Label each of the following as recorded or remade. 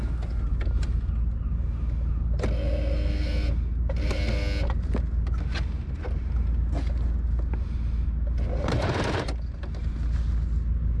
recorded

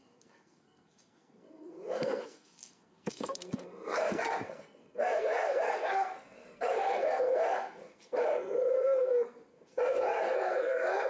remade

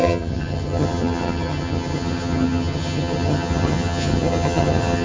remade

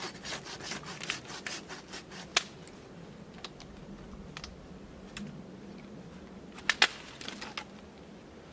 recorded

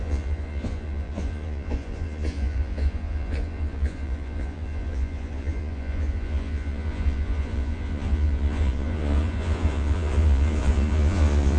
remade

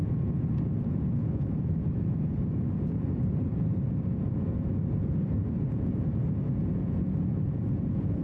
remade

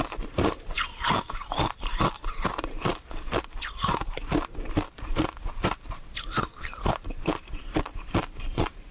remade